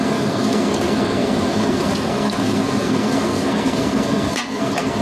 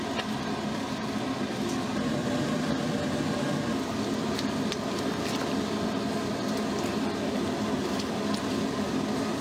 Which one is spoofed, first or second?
first